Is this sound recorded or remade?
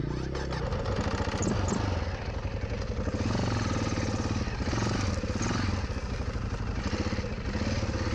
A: recorded